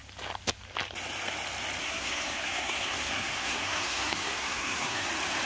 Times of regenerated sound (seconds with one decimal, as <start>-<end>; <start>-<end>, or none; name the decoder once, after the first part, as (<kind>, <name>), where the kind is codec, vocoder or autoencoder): 1.8-5.1 (codec, SNAC)

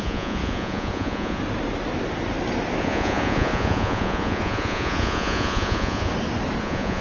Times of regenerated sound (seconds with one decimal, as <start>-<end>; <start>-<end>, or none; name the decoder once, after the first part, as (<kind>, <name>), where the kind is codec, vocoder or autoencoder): 0.0-1.4 (vocoder, Vocos); 2.8-6.1; 6.6-7.0

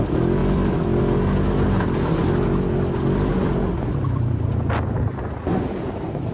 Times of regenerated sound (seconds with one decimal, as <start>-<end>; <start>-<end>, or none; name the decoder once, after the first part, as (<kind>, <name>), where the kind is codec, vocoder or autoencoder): 0.4-1.0 (vocoder, BigVGAN v2); 3.3-4.5

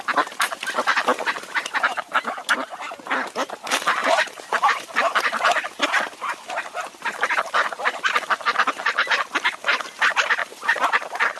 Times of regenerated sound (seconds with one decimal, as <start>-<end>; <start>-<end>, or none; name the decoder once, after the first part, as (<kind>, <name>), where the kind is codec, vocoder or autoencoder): none